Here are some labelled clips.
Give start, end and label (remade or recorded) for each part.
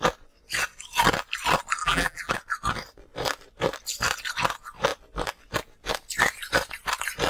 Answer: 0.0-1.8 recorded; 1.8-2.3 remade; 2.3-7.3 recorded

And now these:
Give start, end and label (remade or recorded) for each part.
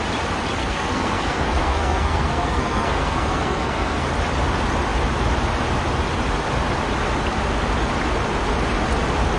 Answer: 0.0-0.6 recorded; 0.6-4.1 remade; 4.1-9.4 recorded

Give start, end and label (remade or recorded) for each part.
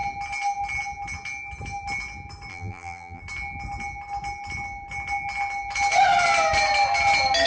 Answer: 0.0-2.5 recorded; 2.5-3.2 remade; 3.2-7.5 recorded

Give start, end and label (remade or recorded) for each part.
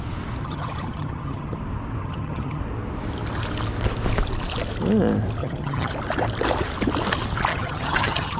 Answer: 0.0-0.4 recorded; 0.4-1.6 remade; 1.6-2.0 recorded; 2.0-2.6 remade; 2.6-5.4 recorded; 5.4-5.9 remade; 5.9-7.5 recorded; 7.5-8.4 remade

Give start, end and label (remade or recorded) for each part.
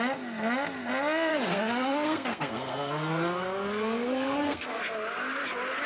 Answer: 0.0-1.3 recorded; 1.3-4.8 remade; 4.8-5.9 recorded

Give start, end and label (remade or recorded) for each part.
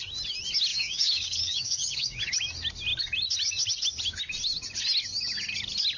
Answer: 0.0-0.7 recorded; 0.7-2.2 remade; 2.2-6.0 recorded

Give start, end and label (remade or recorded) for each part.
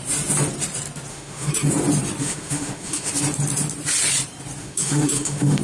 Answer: 0.0-1.1 recorded; 1.1-1.7 remade; 1.7-2.2 recorded; 2.2-3.1 remade; 3.1-4.6 recorded; 4.6-5.6 remade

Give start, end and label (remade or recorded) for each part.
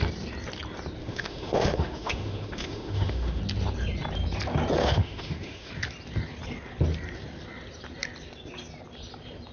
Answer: 0.0-1.0 recorded; 1.0-3.4 remade; 3.4-4.8 recorded; 4.8-5.7 remade; 5.7-9.5 recorded